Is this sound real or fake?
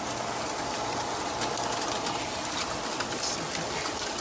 real